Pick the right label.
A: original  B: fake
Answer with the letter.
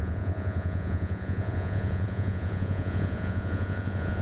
B